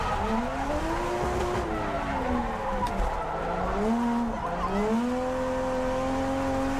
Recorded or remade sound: recorded